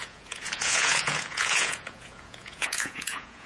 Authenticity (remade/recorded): remade